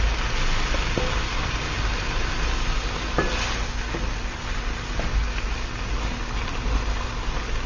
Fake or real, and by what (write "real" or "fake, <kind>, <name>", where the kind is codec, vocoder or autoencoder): real